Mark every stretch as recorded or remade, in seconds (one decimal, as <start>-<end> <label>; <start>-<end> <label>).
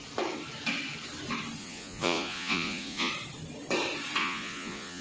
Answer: 0.0-1.6 recorded; 1.6-3.1 remade; 3.1-4.2 recorded; 4.2-5.0 remade